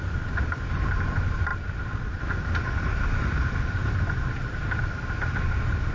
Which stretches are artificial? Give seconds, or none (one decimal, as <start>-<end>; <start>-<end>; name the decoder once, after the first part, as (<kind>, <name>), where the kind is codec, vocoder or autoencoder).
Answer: none